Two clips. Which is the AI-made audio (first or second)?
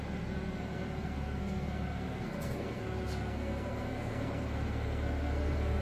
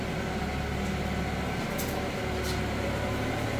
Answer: first